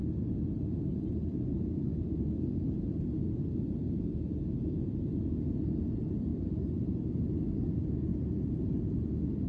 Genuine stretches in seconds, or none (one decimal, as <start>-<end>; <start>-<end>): 0.0-6.3; 7.0-8.1; 8.8-9.5